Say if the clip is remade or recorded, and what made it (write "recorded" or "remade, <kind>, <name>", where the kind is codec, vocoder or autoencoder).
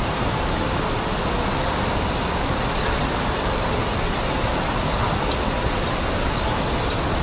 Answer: recorded